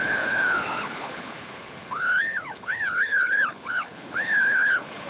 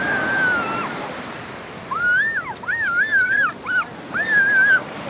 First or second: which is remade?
first